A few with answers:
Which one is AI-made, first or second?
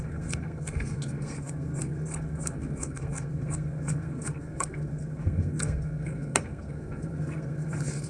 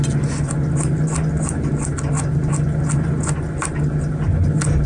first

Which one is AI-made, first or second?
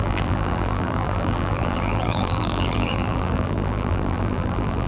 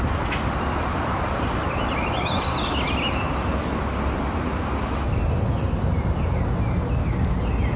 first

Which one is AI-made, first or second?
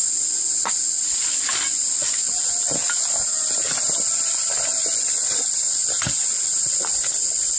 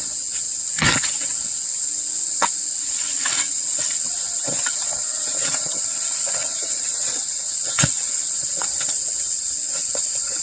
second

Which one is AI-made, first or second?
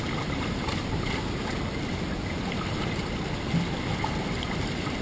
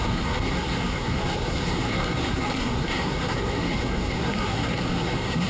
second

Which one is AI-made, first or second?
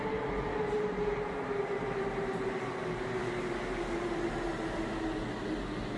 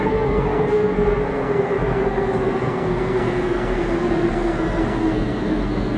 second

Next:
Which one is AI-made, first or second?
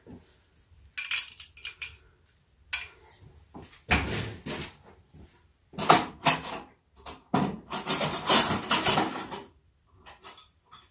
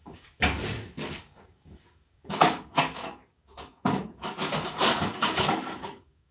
second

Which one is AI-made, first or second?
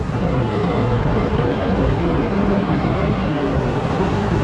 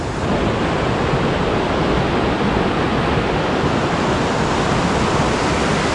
first